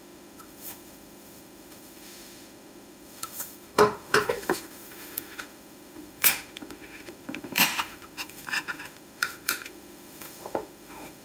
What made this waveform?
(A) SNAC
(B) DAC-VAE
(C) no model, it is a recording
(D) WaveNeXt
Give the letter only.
B